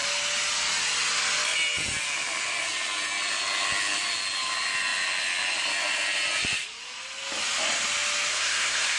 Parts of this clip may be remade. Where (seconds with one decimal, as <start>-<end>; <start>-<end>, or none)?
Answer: 8.3-9.0